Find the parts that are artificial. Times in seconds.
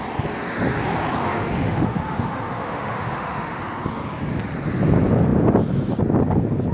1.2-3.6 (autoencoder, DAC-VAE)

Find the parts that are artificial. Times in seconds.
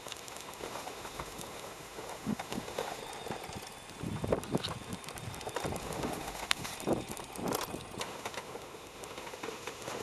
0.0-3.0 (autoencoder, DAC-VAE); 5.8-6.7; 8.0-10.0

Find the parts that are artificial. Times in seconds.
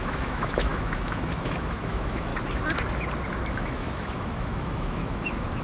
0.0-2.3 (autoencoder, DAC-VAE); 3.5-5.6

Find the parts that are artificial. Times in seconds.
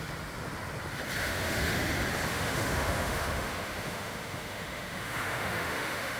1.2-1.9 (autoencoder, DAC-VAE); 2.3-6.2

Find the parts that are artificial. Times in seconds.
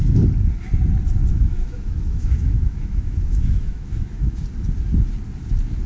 1.3-4.4 (autoencoder, DAC-VAE)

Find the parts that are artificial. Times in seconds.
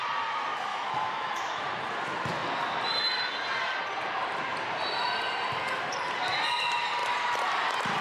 0.7-1.6 (autoencoder, DAC-VAE)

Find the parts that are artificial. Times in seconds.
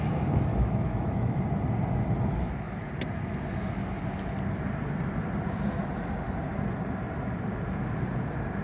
0.5-1.4 (autoencoder, DAC-VAE); 2.3-2.9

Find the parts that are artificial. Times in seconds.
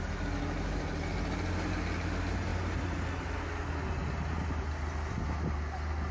none